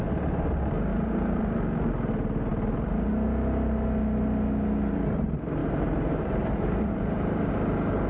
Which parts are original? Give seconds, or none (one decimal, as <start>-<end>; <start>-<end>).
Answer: 0.0-0.9; 1.4-5.6; 7.5-8.1